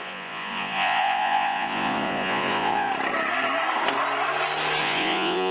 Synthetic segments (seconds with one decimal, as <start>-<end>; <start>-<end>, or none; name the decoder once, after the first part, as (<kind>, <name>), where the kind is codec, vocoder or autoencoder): 0.0-2.9 (vocoder, Vocos); 4.8-5.5